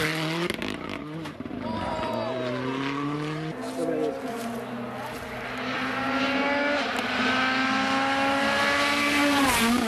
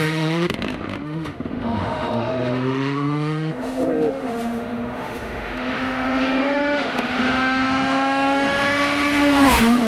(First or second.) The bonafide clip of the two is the first